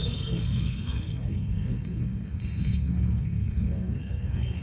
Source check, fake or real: fake